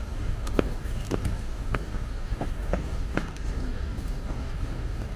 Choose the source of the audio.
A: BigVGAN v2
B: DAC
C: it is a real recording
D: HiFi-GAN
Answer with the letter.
B